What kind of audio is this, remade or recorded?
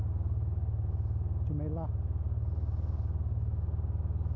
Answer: recorded